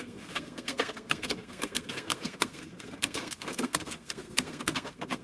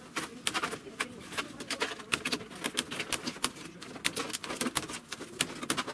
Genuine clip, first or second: second